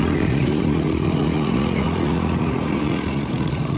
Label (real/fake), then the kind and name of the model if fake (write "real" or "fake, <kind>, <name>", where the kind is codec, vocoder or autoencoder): fake, vocoder, Vocos